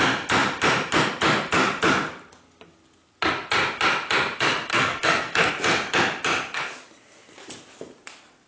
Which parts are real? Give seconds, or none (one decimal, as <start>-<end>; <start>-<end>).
0.0-4.7; 5.5-8.5

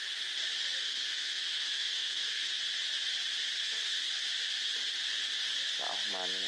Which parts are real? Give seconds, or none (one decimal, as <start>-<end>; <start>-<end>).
0.0-0.8; 2.5-3.6; 4.1-6.5